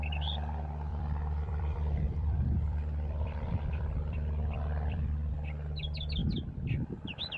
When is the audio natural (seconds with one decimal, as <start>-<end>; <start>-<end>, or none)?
0.0-0.9; 5.3-7.4